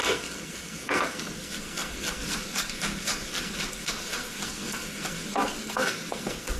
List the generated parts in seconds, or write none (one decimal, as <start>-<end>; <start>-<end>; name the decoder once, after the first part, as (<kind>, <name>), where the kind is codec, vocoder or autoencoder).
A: 0.0-6.6 (codec, SNAC)